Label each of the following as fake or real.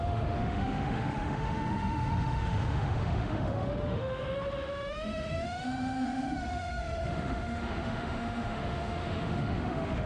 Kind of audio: fake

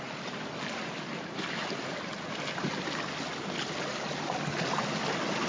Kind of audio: real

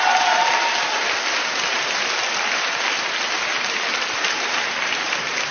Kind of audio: real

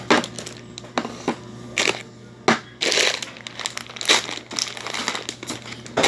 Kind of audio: real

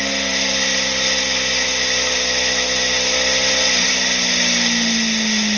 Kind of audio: real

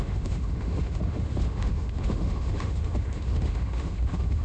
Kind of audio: fake